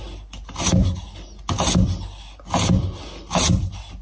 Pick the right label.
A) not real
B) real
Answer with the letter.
B